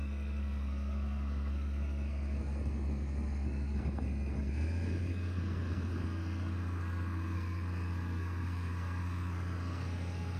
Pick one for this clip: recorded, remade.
remade